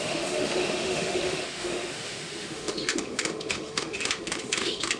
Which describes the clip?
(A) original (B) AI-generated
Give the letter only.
B